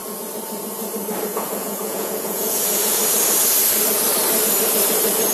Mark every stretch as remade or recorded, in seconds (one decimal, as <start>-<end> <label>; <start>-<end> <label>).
0.0-1.3 recorded; 1.3-3.0 remade; 3.0-5.3 recorded